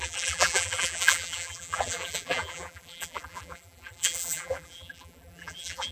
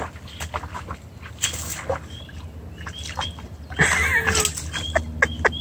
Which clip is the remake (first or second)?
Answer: first